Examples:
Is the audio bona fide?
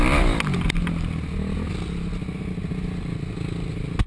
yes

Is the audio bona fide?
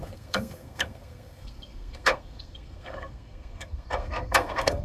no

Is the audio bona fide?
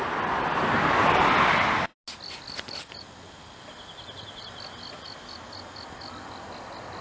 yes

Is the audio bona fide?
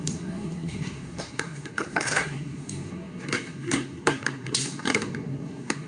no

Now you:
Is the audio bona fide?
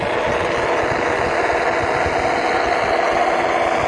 yes